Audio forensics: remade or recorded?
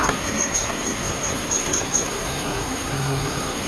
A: remade